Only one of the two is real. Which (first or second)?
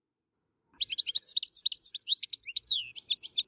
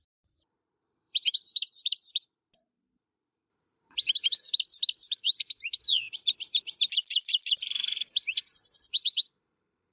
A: first